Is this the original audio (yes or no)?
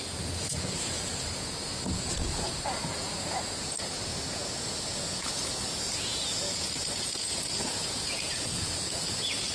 no